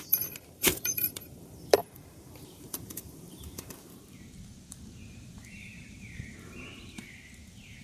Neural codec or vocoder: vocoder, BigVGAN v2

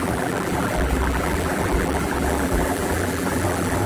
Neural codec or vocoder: vocoder, BigVGAN v2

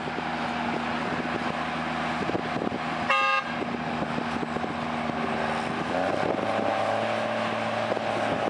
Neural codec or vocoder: none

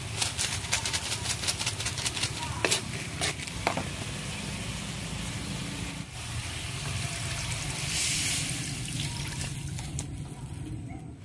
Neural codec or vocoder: none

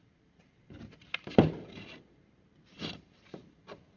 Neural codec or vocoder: vocoder, BigVGAN v2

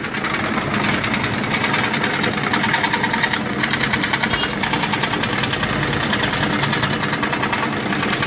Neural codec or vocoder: none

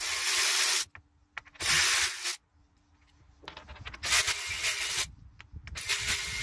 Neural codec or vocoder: none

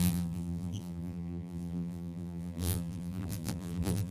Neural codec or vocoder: vocoder, BigVGAN v2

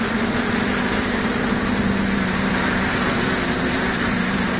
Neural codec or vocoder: vocoder, BigVGAN v2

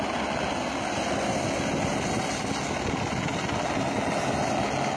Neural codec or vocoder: none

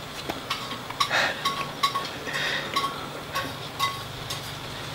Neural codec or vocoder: none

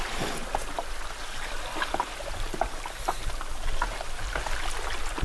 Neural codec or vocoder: none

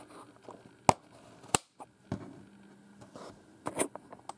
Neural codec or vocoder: none